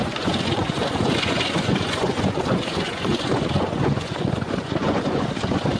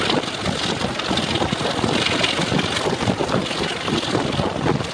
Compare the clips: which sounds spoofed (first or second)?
first